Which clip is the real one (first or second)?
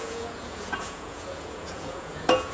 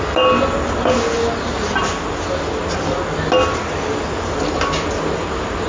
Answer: second